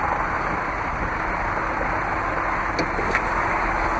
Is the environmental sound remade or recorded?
recorded